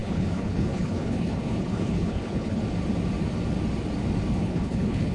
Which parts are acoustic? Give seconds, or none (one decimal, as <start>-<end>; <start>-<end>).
2.6-4.3